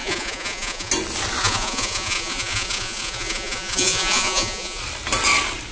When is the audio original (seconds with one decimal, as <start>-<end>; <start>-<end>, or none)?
0.9-1.4; 4.8-5.7

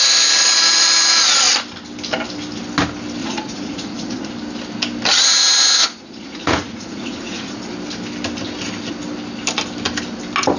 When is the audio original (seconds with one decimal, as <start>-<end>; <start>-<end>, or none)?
0.0-3.2; 4.3-5.8; 7.6-10.6

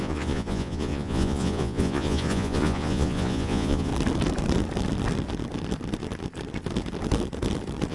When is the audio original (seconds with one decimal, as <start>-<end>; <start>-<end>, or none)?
3.9-7.9

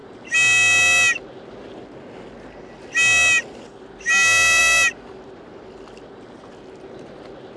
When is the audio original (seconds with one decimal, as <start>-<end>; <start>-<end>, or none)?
0.0-7.6

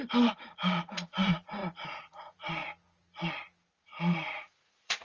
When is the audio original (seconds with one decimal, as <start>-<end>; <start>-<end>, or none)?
1.6-2.1; 2.6-3.8

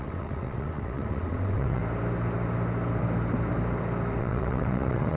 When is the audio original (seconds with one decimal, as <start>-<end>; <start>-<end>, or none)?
1.8-4.2